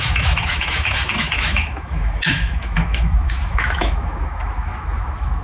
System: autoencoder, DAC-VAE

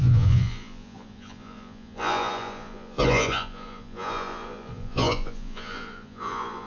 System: vocoder, Vocos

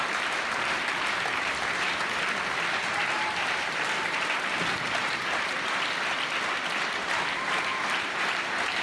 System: none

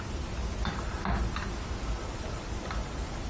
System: none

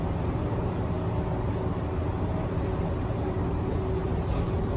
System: none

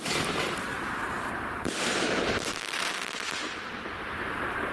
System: vocoder, BigVGAN v2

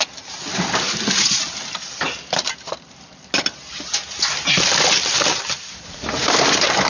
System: none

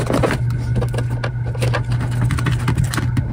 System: none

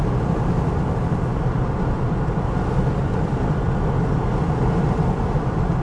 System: none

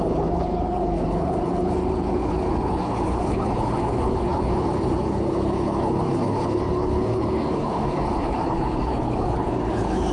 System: codec, HILCodec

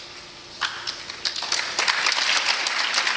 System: none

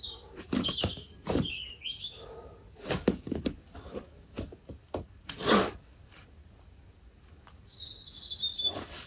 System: codec, DAC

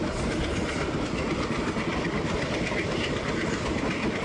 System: none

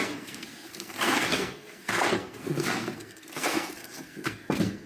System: codec, SNAC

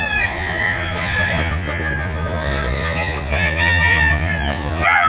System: vocoder, Vocos